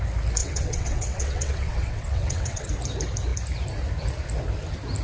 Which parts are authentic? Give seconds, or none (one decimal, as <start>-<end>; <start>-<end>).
0.0-0.4; 2.7-5.0